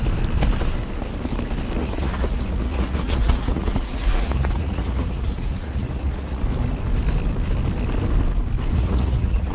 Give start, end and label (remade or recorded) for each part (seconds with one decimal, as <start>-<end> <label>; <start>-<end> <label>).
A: 0.0-1.8 recorded; 1.8-6.4 remade; 6.4-8.7 recorded; 8.7-9.5 remade